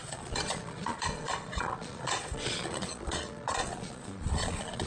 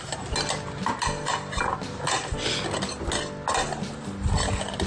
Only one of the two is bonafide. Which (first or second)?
second